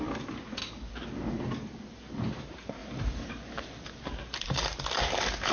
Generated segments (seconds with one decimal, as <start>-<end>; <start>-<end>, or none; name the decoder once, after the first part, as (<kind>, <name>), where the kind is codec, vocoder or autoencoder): 0.6-1.8 (vocoder, BigVGAN v2); 2.8-5.0